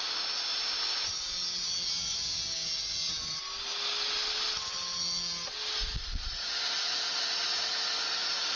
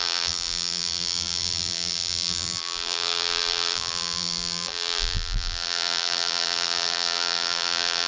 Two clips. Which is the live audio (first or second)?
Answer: first